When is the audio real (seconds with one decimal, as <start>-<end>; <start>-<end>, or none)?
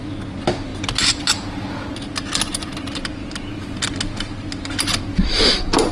0.0-5.1